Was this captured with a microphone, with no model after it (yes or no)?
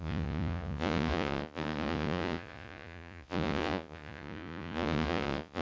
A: no